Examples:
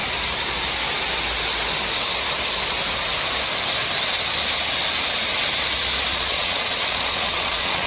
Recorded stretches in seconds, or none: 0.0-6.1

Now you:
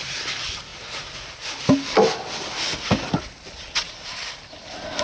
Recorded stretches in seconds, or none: 0.7-3.7

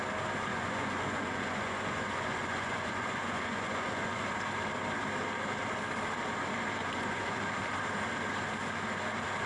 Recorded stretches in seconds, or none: 0.0-0.5; 4.2-6.8; 7.4-9.5